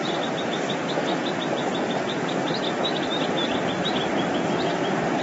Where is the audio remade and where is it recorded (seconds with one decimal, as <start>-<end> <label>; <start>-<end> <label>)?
0.0-5.2 recorded